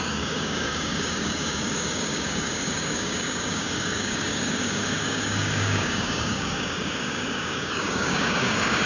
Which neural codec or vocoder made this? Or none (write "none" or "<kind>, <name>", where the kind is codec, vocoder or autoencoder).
codec, DAC